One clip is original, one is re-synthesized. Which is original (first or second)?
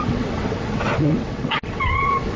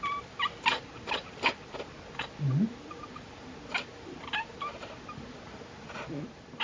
second